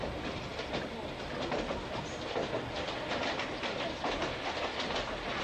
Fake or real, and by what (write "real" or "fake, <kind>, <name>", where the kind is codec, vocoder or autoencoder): real